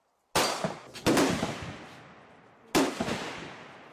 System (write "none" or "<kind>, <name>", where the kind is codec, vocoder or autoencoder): none